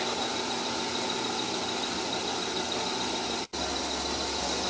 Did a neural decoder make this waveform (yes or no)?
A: no